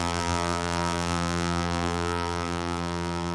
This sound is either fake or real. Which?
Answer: fake